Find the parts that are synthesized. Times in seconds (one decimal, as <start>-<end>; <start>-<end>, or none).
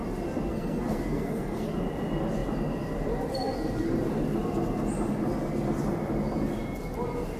0.5-1.7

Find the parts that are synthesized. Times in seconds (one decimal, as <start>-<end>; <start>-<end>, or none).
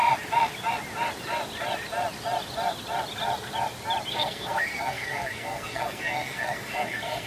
4.1-7.3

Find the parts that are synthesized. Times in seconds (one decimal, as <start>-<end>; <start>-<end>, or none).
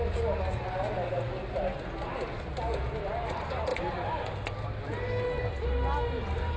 none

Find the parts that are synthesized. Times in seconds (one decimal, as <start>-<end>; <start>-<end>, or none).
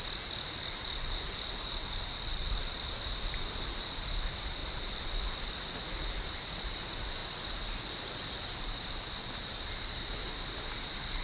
none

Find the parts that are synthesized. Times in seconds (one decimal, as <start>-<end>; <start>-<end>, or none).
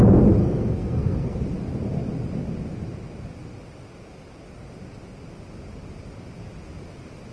0.4-1.4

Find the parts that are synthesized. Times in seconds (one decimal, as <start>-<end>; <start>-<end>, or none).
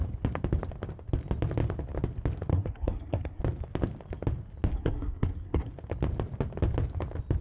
2.5-3.4; 4.7-5.7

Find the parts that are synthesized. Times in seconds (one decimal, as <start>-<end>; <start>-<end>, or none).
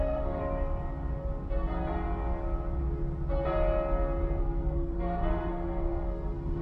0.0-0.4; 4.4-6.6